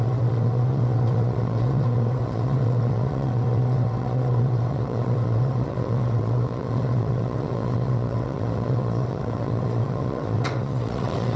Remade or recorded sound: remade